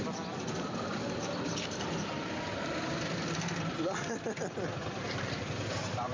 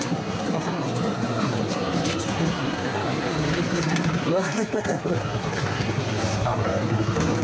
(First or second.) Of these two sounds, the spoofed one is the second